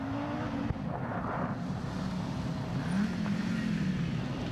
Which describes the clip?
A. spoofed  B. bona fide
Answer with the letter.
B